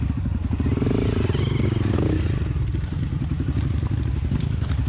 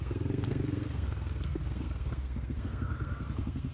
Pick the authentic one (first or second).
first